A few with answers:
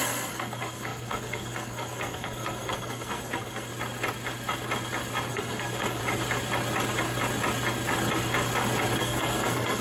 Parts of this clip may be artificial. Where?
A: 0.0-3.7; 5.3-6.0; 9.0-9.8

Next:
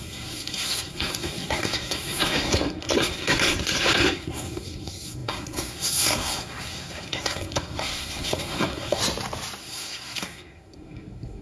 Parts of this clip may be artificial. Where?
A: 0.0-9.0; 9.6-11.4

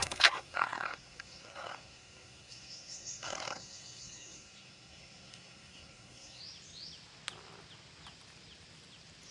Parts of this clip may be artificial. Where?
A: 0.0-6.4

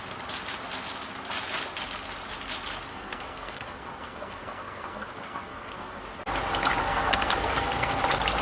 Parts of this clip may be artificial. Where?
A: 2.9-6.0; 6.8-8.0

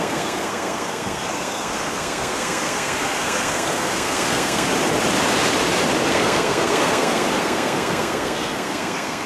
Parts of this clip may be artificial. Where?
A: 0.0-4.7; 6.1-9.3

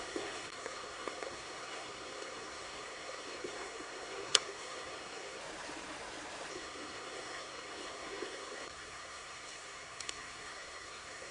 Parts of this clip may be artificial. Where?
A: 0.0-5.4; 6.5-11.3

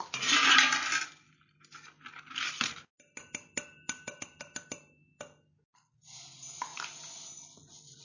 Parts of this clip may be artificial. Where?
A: none